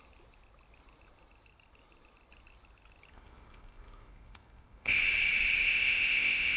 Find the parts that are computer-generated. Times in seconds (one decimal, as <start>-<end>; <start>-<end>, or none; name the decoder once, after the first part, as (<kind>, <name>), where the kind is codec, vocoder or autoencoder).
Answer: 3.1-5.0 (codec, ZipCodec); 5.6-6.6